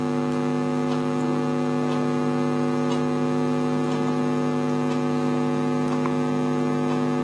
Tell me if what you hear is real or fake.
real